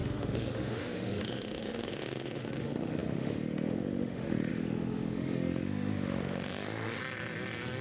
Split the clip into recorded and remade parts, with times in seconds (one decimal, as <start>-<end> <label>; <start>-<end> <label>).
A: 0.0-7.0 remade; 7.0-7.8 recorded